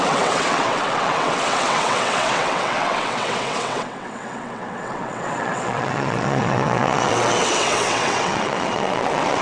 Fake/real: fake